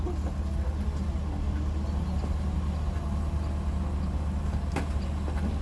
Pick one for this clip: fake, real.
real